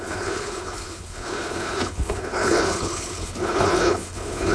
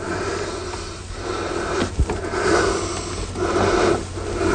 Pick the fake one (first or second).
first